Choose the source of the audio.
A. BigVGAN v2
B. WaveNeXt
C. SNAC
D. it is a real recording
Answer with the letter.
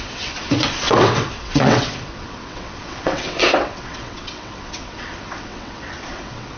B